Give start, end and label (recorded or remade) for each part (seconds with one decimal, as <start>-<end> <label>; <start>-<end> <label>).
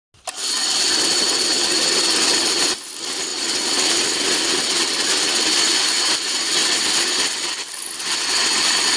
0.0-3.3 recorded; 3.3-4.6 remade; 4.6-9.0 recorded